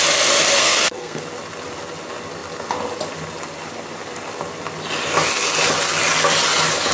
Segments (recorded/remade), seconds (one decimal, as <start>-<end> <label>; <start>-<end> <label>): 0.0-0.6 recorded; 0.6-1.2 remade; 1.2-6.9 recorded